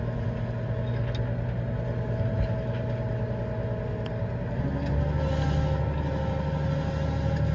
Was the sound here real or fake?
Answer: real